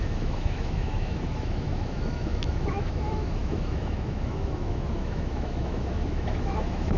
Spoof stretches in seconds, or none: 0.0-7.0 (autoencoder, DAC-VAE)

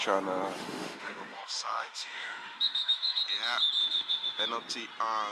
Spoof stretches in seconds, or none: 0.6-3.2 (autoencoder, DAC-VAE); 3.8-4.4